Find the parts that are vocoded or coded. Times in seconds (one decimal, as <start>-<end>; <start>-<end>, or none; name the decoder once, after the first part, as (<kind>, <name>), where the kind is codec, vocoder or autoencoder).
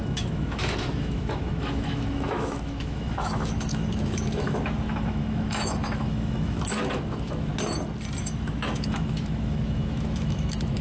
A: 0.0-7.5 (autoencoder, DAC-VAE); 8.2-10.8